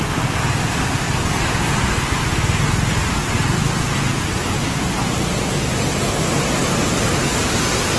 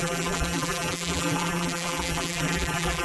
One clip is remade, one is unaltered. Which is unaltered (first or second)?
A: first